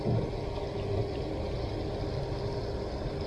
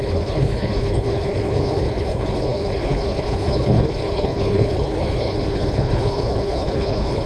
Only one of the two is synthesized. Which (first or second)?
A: second